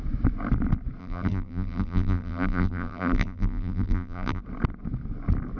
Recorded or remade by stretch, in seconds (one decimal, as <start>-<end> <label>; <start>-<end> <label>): 0.0-1.0 recorded; 1.0-4.4 remade; 4.4-5.6 recorded

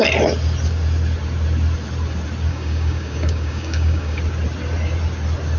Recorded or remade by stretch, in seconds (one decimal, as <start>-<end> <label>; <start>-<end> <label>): 0.0-2.5 recorded; 2.5-4.2 remade; 4.2-5.6 recorded

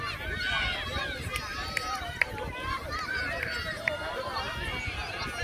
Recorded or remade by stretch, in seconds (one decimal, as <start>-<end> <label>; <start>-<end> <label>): 0.0-1.5 recorded; 1.5-4.4 remade; 4.4-5.4 recorded

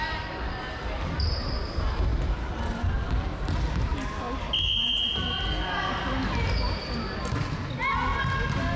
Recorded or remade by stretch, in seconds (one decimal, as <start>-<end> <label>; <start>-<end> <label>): 0.0-8.8 recorded

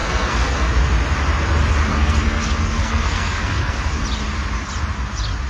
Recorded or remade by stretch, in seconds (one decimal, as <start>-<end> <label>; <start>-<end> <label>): 0.0-0.7 remade; 0.7-1.9 recorded; 1.9-4.0 remade; 4.0-5.5 recorded

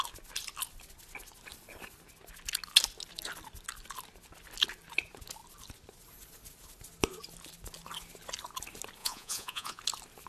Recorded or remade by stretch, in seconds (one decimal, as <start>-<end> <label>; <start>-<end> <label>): 0.0-9.0 recorded; 9.0-9.8 remade; 9.8-10.3 recorded